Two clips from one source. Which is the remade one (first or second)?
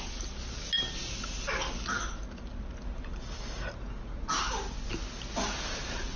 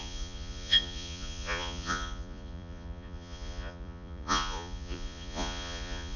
second